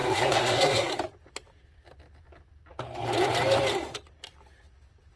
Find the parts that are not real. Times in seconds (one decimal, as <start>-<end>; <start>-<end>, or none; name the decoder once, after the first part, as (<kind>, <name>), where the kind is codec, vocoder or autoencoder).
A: 0.0-0.9 (codec, SNAC)